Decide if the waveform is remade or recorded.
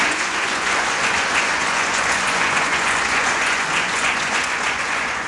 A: remade